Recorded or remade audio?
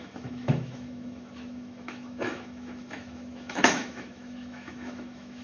remade